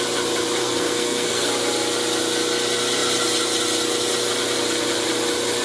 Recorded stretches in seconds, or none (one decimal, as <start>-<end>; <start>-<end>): 0.0-0.6; 1.5-5.6